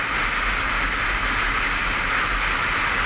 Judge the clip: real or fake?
real